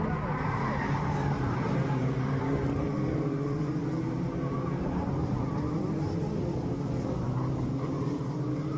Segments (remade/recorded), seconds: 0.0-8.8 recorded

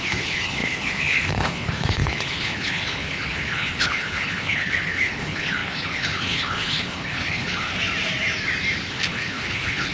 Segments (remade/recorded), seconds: 0.0-7.8 remade; 7.8-8.9 recorded; 8.9-9.9 remade

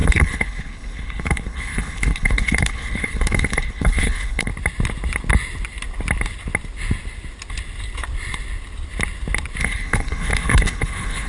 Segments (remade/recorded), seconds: 0.0-4.5 remade; 4.5-9.6 recorded; 9.6-11.3 remade